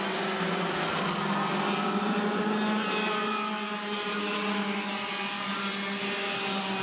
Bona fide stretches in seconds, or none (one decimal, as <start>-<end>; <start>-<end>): 0.0-4.1; 4.9-6.8